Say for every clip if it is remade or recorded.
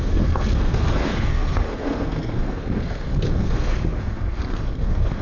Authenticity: remade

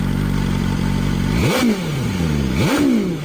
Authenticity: recorded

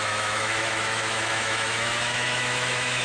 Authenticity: remade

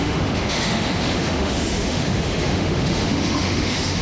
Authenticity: remade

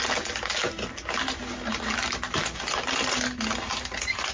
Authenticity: recorded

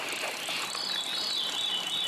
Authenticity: recorded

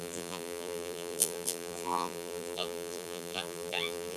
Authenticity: remade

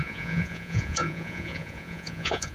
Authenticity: remade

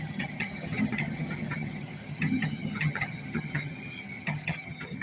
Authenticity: remade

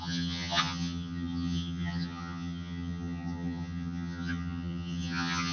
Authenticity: remade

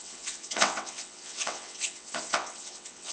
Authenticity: remade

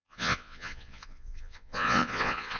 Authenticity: remade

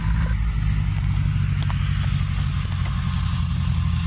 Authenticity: recorded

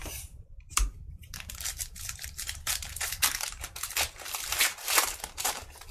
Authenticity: remade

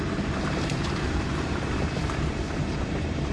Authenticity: remade